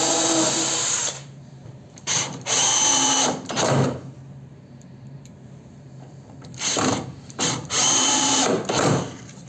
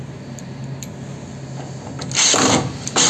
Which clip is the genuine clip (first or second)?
second